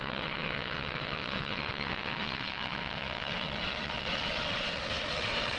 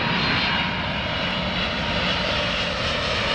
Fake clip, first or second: first